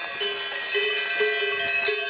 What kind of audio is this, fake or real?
real